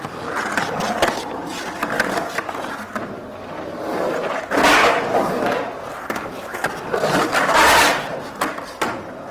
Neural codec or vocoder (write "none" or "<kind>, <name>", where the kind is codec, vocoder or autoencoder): none